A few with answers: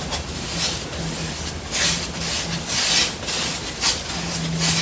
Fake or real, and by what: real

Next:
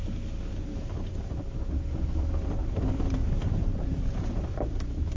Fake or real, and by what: real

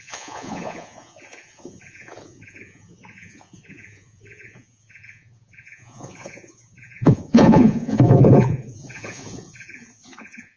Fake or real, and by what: fake, vocoder, Vocos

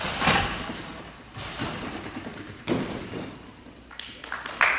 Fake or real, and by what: real